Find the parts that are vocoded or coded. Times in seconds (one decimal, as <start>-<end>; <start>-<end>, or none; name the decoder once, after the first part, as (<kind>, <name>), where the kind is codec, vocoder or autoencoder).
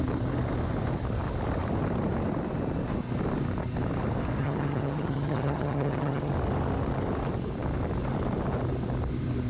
4.4-6.3 (vocoder, HiFi-GAN)